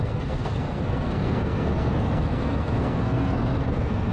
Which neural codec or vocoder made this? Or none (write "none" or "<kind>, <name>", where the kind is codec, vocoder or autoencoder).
codec, SNAC